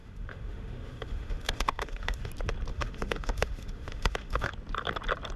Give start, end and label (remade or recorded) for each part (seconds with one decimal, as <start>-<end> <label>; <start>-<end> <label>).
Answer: 0.0-2.3 remade; 2.3-2.7 recorded; 2.7-4.5 remade; 4.5-5.4 recorded